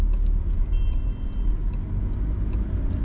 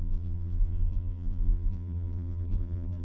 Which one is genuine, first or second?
first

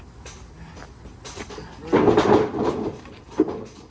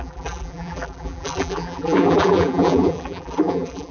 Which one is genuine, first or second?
first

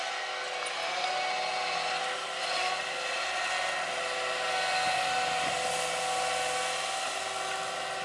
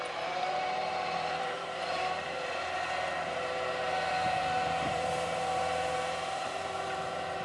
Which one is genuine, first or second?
first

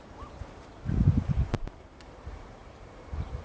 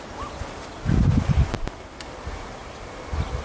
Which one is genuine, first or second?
second